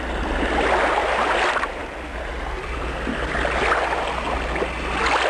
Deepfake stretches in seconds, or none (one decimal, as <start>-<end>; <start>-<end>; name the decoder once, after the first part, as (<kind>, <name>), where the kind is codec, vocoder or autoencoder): none